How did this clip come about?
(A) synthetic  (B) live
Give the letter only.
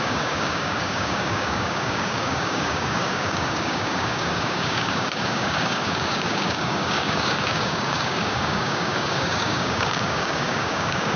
A